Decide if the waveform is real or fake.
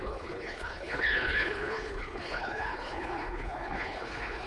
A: fake